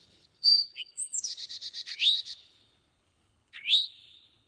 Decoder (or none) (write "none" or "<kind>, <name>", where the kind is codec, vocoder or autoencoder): codec, HILCodec